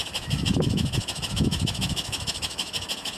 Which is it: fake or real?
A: fake